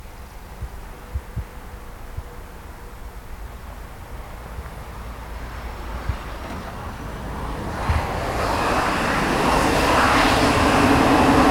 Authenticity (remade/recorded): recorded